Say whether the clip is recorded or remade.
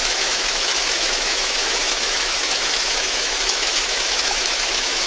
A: remade